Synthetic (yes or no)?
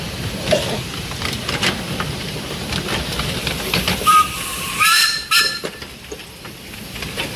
yes